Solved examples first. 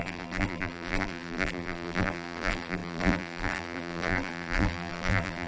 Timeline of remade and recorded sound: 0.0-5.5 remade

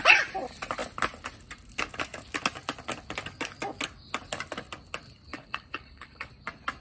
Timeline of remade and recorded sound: 0.0-5.3 recorded; 5.3-6.3 remade; 6.3-6.8 recorded

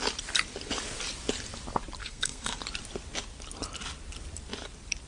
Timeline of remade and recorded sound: 0.0-2.0 recorded; 2.0-2.6 remade; 2.6-5.1 recorded

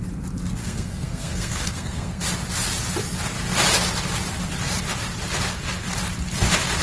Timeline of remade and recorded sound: 0.0-0.6 recorded; 0.6-2.2 remade; 2.2-6.8 recorded

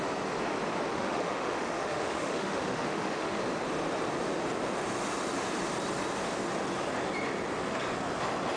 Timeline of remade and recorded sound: 0.0-0.9 recorded; 0.9-3.4 remade; 3.4-8.6 recorded

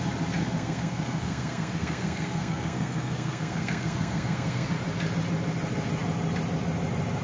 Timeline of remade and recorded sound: 0.0-0.4 recorded; 0.4-4.7 remade; 4.7-7.2 recorded

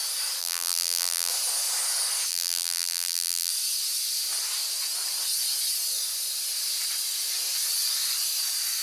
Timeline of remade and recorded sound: 0.0-0.4 recorded; 0.4-1.3 remade; 1.3-2.3 recorded; 2.3-3.5 remade; 3.5-8.8 recorded